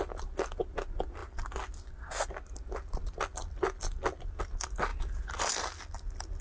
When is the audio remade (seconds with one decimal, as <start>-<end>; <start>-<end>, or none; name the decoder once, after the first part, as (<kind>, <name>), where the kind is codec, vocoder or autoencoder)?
none